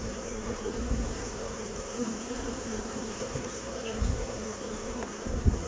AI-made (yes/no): yes